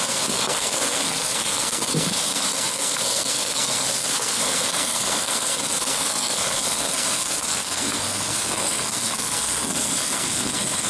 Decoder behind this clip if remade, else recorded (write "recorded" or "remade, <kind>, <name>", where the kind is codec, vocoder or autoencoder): remade, codec, SNAC